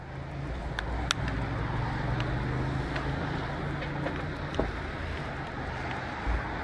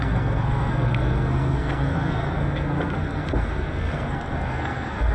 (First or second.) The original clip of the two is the first